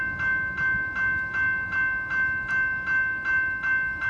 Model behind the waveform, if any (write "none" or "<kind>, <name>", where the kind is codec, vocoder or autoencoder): none